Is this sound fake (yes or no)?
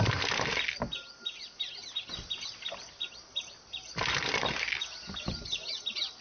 no